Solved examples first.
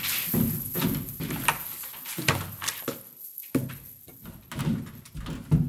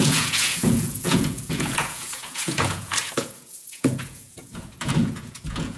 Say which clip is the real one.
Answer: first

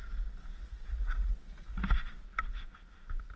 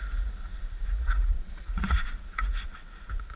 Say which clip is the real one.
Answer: first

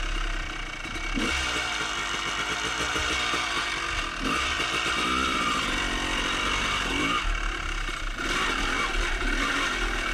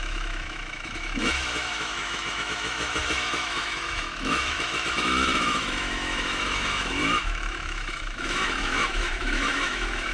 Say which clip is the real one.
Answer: first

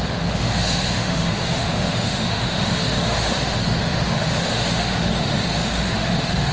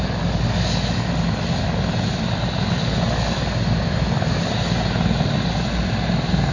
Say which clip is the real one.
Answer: second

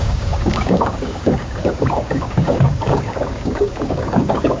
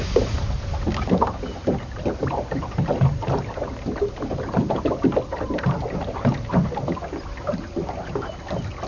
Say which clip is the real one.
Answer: second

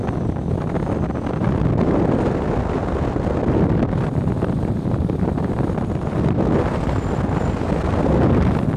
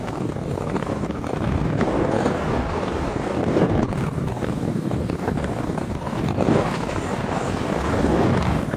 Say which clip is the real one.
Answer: first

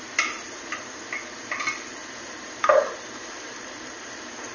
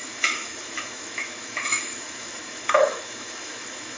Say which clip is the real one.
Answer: first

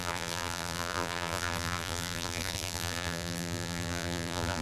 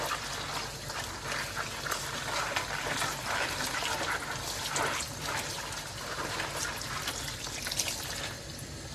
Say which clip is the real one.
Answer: second